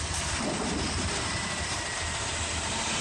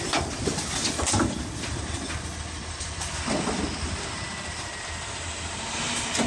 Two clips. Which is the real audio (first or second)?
second